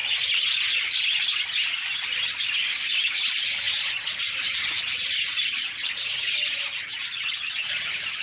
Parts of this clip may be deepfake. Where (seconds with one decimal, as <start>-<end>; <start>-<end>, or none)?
none